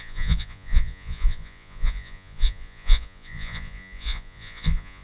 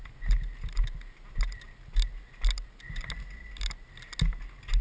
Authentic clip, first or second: second